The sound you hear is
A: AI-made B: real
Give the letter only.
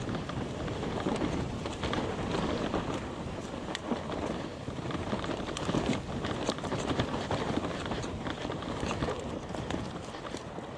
A